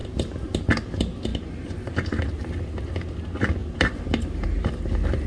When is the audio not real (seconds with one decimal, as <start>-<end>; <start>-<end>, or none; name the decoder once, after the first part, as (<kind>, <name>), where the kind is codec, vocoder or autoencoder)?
0.0-0.6 (vocoder, BigVGAN v2); 1.3-1.9; 3.6-4.7

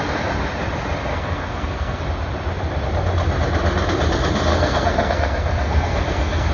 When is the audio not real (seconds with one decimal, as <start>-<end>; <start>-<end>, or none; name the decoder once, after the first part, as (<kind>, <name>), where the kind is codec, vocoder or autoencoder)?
1.1-2.0 (codec, SNAC); 4.5-6.5

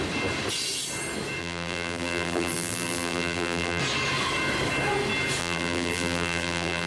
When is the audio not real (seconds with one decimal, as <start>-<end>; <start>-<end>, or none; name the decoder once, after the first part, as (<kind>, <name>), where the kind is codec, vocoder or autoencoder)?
1.4-3.8 (vocoder, BigVGAN v2); 5.4-6.9

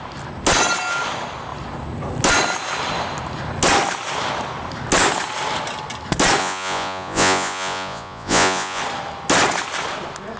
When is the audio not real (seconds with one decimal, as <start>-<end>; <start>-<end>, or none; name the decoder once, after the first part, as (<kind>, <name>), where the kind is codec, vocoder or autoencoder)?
6.4-8.8 (vocoder, Vocos)

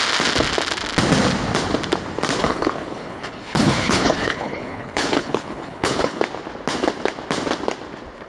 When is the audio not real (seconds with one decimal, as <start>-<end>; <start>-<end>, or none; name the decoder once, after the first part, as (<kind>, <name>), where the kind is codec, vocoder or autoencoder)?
2.4-6.2 (codec, HILCodec)

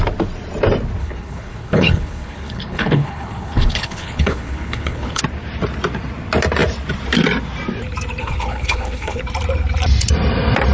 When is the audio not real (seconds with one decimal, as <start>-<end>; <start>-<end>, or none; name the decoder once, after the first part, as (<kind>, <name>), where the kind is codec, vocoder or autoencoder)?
1.0-5.2 (codec, HILCodec); 8.2-9.2

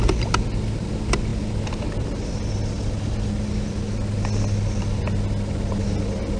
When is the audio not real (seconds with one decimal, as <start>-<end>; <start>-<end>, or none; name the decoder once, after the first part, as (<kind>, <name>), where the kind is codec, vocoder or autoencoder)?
none

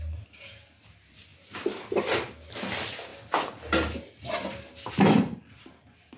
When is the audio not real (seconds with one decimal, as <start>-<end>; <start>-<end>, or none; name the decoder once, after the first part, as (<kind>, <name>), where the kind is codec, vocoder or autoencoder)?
none